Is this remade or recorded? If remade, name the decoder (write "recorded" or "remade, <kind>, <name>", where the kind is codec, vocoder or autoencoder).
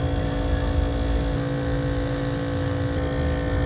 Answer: recorded